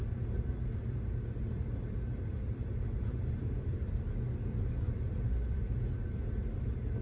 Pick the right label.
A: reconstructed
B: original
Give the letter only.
B